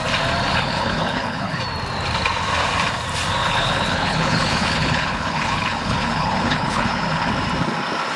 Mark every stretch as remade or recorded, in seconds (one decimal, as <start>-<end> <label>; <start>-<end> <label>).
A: 0.0-0.5 recorded; 0.5-1.6 remade; 1.6-3.4 recorded; 3.4-7.3 remade; 7.3-8.2 recorded